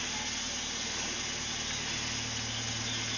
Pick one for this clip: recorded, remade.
recorded